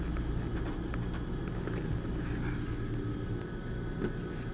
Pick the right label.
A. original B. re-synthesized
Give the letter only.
A